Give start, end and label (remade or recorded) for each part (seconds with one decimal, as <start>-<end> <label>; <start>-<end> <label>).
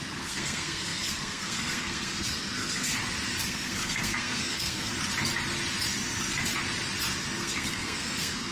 0.0-2.9 remade; 2.9-3.4 recorded; 3.4-4.9 remade; 4.9-7.4 recorded; 7.4-8.5 remade